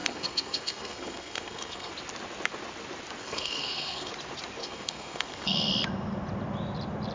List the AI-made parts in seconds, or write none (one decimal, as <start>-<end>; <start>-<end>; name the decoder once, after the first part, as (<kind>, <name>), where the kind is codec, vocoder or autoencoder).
0.0-1.9 (codec, SNAC); 3.2-4.1; 4.6-5.7